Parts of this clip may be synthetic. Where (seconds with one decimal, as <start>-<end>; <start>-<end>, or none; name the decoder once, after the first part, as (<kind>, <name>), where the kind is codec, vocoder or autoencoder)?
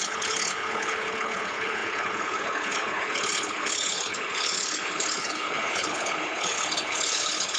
0.0-7.6 (codec, HILCodec)